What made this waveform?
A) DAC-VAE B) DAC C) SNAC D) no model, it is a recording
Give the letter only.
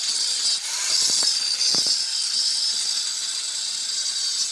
D